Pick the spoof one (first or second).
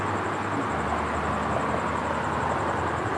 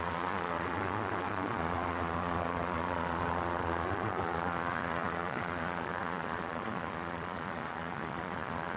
second